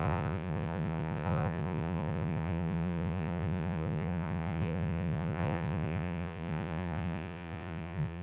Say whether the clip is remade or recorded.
remade